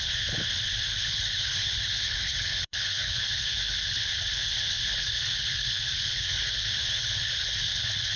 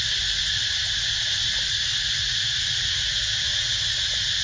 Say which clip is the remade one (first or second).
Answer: first